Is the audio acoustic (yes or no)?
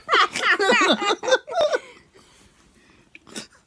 yes